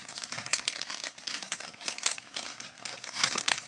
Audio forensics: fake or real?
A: fake